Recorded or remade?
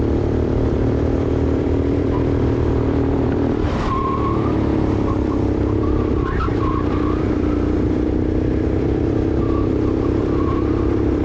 remade